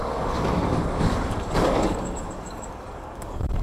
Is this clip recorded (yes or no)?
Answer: no